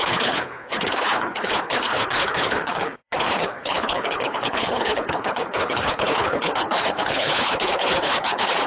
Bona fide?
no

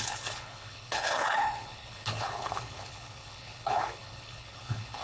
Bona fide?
no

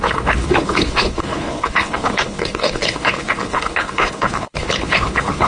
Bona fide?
no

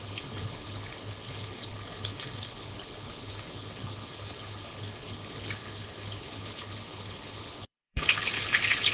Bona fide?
no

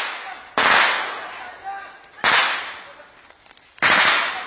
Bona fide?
yes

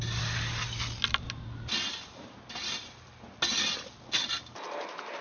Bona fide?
yes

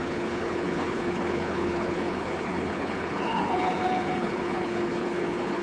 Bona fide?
no